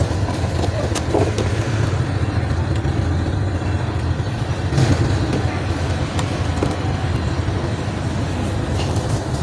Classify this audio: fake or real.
real